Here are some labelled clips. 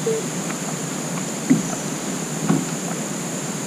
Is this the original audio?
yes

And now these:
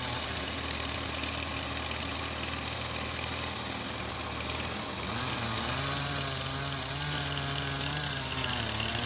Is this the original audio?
yes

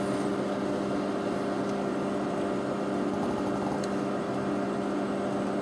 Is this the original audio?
yes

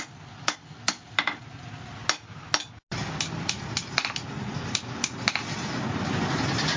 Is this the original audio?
yes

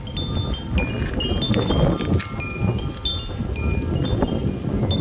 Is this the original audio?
yes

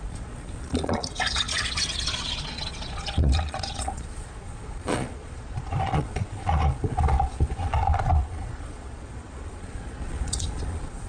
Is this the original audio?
no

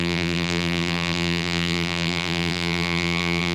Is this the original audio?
no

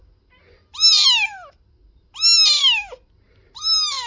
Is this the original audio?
yes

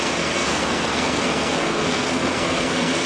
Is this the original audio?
no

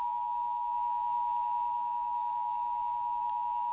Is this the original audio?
no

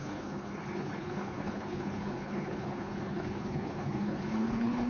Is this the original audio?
no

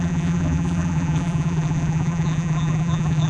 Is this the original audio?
no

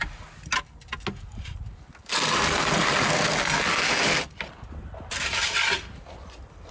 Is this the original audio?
yes